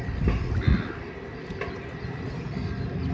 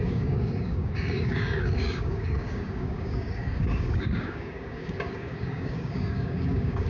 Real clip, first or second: first